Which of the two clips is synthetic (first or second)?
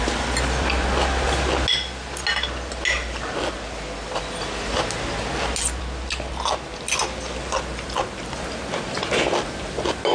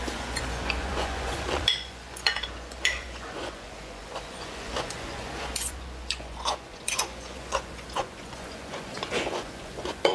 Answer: second